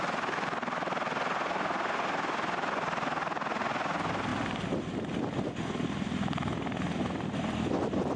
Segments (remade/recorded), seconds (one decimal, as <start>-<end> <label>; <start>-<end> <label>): 0.0-8.2 recorded